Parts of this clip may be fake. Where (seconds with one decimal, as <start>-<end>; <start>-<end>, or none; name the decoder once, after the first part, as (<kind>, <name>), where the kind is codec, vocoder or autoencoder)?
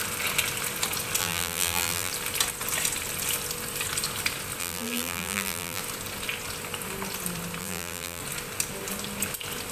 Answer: 1.2-2.1 (vocoder, BigVGAN v2); 4.6-5.8; 7.6-8.2